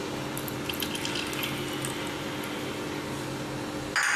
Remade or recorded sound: recorded